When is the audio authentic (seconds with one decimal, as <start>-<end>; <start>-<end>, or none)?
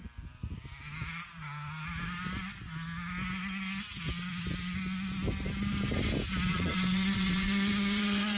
0.0-6.5